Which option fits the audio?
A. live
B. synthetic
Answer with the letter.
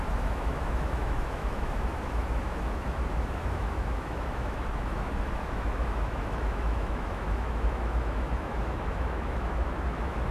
B